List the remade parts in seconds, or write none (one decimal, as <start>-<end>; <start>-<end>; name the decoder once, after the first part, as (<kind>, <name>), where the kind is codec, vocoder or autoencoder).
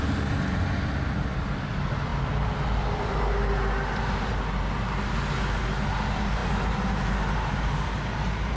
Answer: none